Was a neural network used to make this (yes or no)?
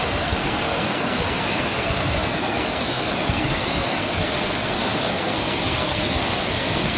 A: yes